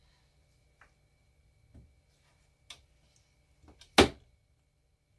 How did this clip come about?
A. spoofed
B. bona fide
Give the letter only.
B